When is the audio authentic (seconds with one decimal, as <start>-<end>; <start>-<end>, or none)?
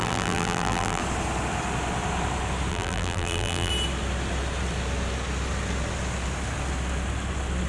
1.0-2.7; 3.7-7.7